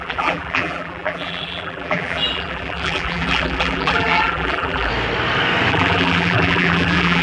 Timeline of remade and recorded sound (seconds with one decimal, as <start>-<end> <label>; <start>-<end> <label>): 0.0-4.9 remade; 4.9-5.7 recorded; 5.7-7.2 remade